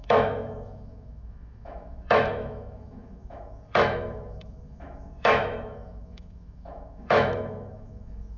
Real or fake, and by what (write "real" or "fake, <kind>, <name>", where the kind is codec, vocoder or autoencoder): fake, autoencoder, DAC-VAE